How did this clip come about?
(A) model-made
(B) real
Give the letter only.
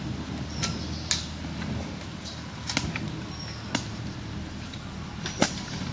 B